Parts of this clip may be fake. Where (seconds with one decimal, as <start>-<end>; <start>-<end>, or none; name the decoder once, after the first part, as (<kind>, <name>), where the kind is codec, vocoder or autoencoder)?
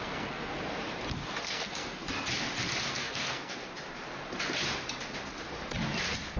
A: 0.0-0.5 (codec, SNAC); 1.4-2.0; 2.9-3.6